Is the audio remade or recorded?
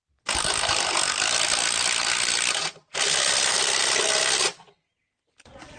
recorded